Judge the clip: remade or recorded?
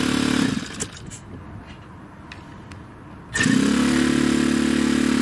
recorded